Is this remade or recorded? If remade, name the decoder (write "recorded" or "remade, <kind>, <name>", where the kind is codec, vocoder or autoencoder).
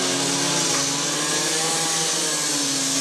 recorded